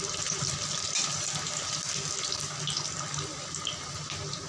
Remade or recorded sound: recorded